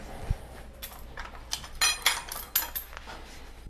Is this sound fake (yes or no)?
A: no